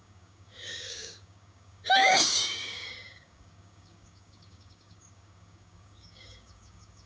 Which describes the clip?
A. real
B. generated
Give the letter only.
B